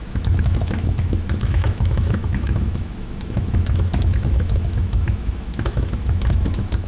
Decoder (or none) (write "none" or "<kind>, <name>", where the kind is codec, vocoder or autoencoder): autoencoder, DAC-VAE